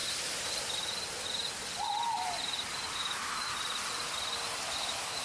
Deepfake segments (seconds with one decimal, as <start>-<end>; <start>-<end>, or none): 3.0-3.5; 4.8-5.2